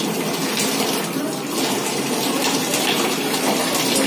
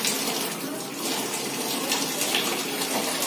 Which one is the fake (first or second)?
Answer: first